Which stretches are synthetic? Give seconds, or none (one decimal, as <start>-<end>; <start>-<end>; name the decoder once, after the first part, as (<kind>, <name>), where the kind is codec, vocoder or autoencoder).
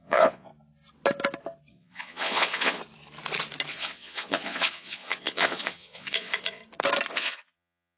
0.0-0.5 (vocoder, Vocos); 1.7-2.8; 3.7-6.6; 7.1-8.0